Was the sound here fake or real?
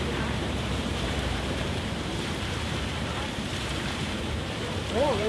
fake